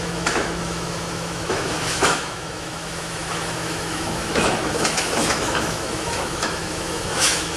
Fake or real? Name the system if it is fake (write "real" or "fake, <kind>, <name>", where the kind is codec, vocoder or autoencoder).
fake, autoencoder, DAC-VAE